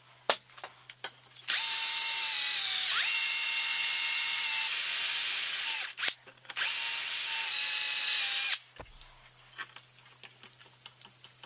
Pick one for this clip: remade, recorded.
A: recorded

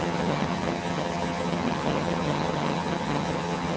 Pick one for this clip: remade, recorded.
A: remade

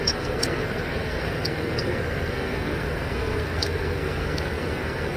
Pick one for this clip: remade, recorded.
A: remade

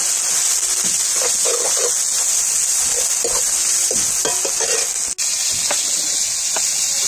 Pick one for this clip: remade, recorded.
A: recorded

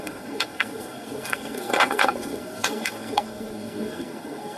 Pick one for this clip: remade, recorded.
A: remade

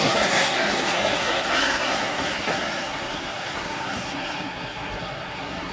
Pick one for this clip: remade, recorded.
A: remade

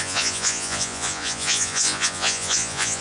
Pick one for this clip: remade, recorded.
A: remade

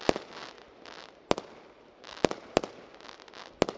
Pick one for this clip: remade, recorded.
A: recorded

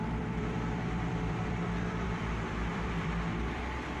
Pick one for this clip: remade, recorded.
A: remade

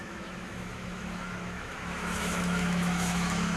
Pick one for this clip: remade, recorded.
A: remade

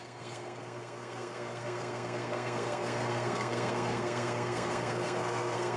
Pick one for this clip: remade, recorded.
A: remade